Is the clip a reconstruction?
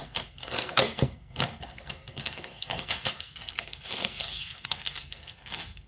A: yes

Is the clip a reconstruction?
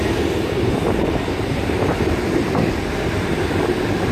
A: no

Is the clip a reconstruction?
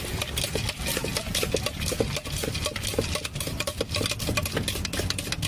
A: no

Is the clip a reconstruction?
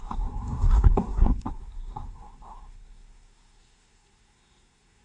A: yes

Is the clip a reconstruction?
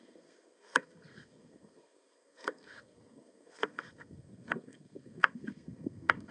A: yes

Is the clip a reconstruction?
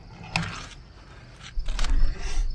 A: no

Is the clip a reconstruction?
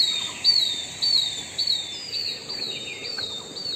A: no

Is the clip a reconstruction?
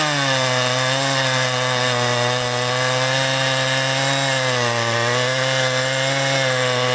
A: no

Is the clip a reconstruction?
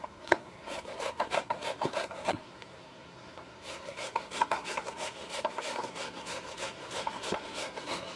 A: yes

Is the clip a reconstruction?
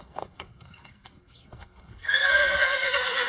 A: yes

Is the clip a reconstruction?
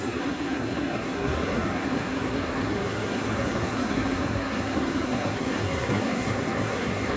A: yes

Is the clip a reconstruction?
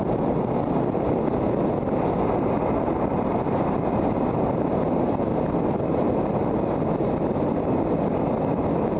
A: no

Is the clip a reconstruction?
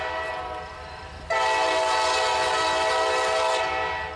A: no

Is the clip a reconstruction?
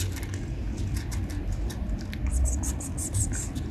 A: no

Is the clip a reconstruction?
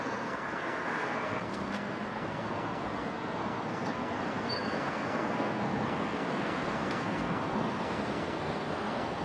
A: yes